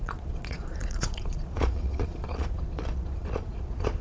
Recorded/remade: remade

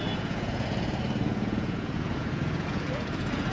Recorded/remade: remade